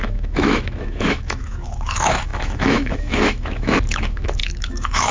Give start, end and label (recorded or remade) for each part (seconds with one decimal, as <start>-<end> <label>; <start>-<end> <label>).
0.0-5.1 remade

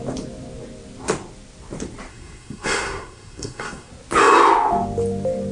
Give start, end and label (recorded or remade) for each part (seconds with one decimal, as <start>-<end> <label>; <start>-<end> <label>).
0.0-2.1 recorded; 2.1-3.9 remade; 3.9-5.5 recorded